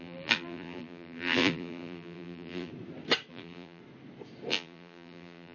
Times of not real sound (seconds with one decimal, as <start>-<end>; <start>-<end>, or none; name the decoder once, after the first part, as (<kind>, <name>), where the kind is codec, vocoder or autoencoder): 0.0-2.7 (vocoder, BigVGAN v2); 3.3-3.8; 4.5-5.5